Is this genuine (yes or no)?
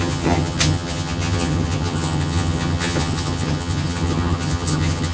no